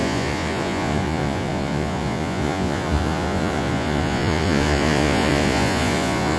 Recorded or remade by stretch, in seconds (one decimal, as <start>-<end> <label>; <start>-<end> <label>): 0.0-6.4 remade